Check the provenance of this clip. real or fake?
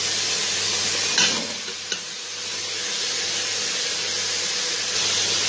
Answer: real